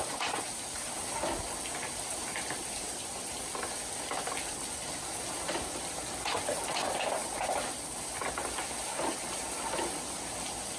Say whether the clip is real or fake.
real